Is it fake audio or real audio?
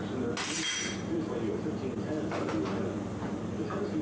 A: real